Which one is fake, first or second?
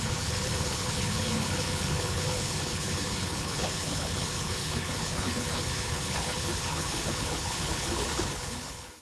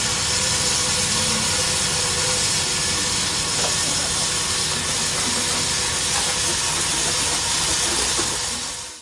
first